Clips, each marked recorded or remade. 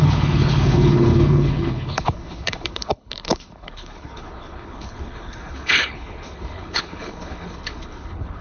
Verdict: remade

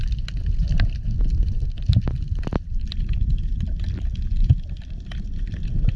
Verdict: remade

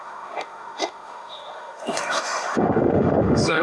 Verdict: remade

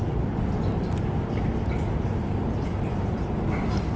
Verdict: recorded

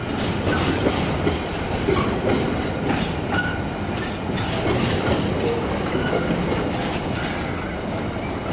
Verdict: recorded